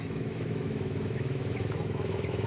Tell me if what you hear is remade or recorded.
remade